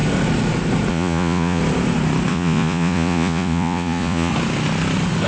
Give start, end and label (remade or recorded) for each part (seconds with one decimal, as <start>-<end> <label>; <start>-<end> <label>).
0.0-0.9 recorded; 0.9-1.6 remade; 1.6-2.3 recorded; 2.3-4.3 remade; 4.3-5.3 recorded